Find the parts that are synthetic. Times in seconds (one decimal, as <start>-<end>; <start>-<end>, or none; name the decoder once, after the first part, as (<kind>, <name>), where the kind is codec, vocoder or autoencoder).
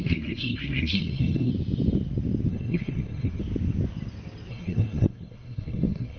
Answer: 0.0-1.5 (codec, SNAC); 2.5-3.4; 4.5-6.2